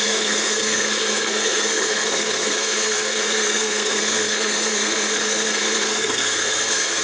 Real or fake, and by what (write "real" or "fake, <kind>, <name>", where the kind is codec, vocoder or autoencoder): fake, codec, SNAC